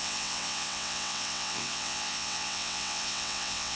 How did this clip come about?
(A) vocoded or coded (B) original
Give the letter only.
A